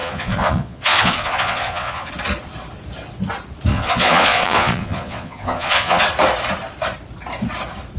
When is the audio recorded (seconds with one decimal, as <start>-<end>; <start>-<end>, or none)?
2.1-3.7; 6.0-8.0